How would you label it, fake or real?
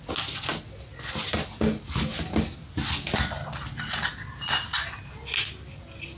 real